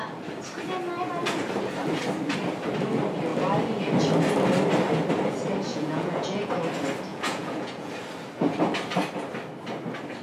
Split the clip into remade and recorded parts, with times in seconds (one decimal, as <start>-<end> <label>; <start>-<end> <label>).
0.0-5.7 recorded; 5.7-6.5 remade; 6.5-7.1 recorded; 7.1-7.9 remade; 7.9-10.2 recorded